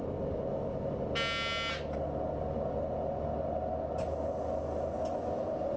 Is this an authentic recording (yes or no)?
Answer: yes